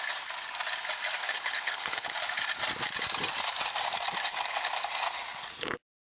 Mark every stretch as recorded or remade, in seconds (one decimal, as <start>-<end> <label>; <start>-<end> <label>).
0.0-1.2 recorded; 1.2-2.1 remade; 2.1-6.0 recorded